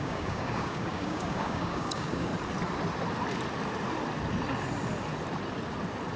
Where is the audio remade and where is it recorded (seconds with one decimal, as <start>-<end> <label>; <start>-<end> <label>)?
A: 0.0-2.3 remade; 2.3-6.2 recorded